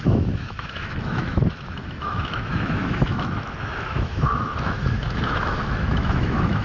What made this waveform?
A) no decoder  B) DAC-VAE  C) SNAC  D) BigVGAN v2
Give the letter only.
B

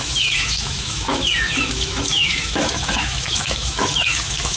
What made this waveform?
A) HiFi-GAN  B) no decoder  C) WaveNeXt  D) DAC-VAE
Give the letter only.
D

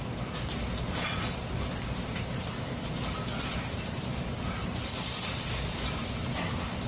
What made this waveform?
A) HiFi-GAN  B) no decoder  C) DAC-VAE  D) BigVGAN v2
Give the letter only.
B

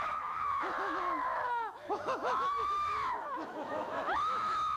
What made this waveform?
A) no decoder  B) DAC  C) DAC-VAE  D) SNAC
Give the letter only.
C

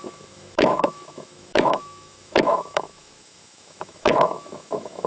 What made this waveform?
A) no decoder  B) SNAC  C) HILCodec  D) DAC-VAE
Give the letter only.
D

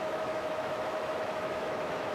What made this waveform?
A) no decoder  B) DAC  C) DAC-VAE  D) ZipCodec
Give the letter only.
C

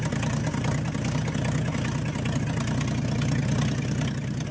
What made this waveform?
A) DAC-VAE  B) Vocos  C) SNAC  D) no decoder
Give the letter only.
D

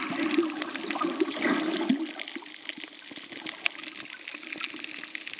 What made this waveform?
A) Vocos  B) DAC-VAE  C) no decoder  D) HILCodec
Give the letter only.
C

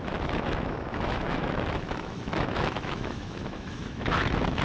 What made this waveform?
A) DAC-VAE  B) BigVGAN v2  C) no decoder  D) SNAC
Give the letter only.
A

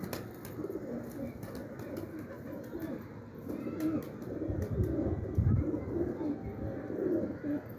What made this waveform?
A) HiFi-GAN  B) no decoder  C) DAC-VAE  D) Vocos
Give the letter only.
B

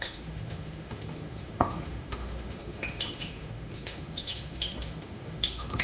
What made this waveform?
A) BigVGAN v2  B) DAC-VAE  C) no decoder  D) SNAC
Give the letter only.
B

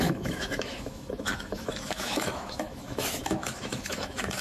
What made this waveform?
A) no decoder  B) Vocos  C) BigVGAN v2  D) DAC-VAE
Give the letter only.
D